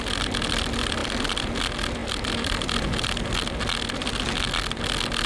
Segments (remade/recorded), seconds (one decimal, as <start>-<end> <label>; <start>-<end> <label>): 0.0-1.0 recorded; 1.0-1.5 remade; 1.5-2.0 recorded; 2.0-3.1 remade; 3.1-5.3 recorded